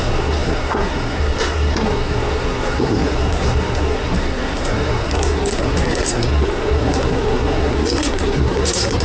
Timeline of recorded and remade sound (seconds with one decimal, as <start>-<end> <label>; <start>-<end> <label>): 0.0-9.0 remade